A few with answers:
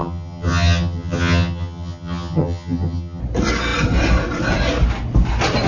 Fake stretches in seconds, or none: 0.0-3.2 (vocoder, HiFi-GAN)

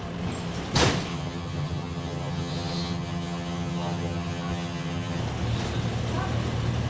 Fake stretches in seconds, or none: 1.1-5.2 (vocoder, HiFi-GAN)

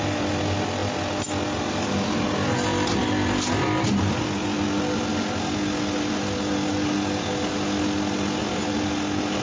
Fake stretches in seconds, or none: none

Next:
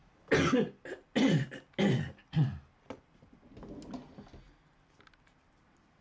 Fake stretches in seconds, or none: none

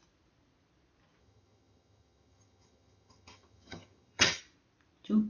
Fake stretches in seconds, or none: 1.2-4.4 (vocoder, HiFi-GAN)

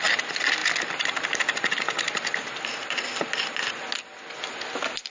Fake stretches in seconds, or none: none

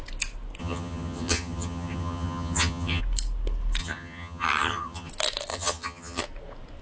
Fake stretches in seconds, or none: 0.6-3.0 (vocoder, HiFi-GAN); 3.8-5.1; 5.5-6.2